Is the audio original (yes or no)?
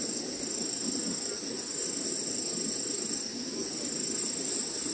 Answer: yes